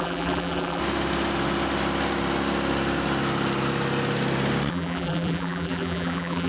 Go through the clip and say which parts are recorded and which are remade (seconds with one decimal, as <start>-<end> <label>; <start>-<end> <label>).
0.0-0.8 remade; 0.8-4.7 recorded; 4.7-6.5 remade